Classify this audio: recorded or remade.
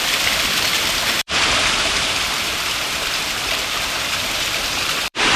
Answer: remade